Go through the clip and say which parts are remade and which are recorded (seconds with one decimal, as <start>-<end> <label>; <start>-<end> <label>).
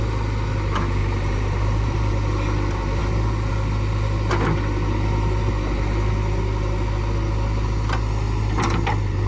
0.0-1.0 recorded; 1.0-2.1 remade; 2.1-9.3 recorded